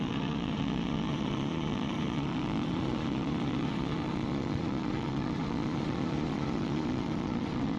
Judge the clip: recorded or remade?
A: remade